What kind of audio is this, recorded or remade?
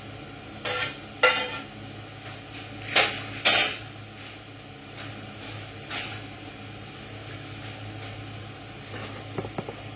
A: recorded